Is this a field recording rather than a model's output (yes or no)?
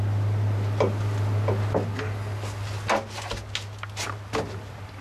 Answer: yes